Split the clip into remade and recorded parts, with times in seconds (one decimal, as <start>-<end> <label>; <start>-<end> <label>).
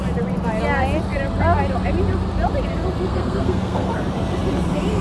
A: 0.0-3.1 recorded; 3.1-3.9 remade; 3.9-5.0 recorded